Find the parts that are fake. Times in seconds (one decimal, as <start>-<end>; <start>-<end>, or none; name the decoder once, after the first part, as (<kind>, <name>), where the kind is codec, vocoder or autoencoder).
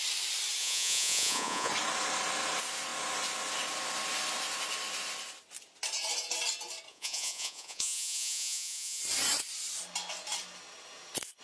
0.6-1.7 (vocoder, Vocos); 6.9-9.0